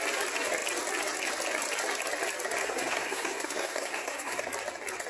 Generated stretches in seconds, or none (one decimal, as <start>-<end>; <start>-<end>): 2.6-4.4